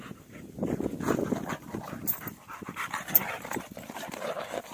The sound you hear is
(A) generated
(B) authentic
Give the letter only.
B